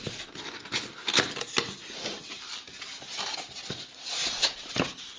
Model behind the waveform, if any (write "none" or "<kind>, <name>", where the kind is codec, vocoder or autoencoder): none